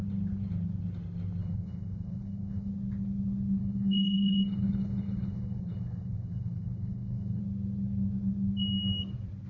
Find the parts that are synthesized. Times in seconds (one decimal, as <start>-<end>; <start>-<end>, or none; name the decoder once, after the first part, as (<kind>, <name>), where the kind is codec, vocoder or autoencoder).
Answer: 1.4-2.7 (codec, HILCodec); 3.6-7.4